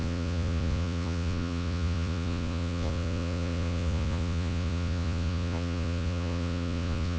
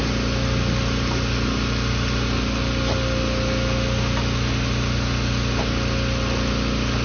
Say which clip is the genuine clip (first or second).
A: second